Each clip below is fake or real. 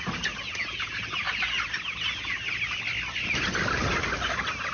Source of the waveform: real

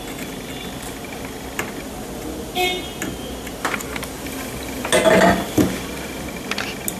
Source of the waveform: real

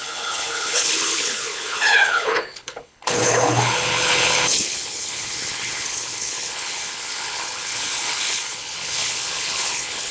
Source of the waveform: fake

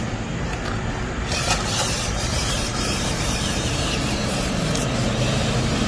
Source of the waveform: fake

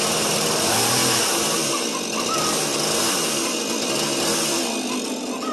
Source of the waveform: real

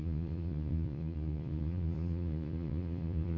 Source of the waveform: fake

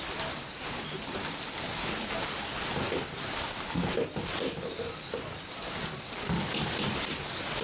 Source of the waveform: real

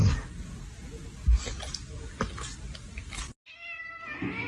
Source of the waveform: real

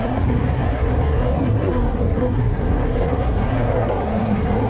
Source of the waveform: fake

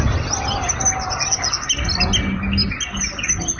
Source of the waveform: real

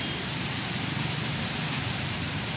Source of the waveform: fake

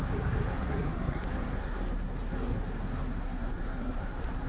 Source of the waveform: fake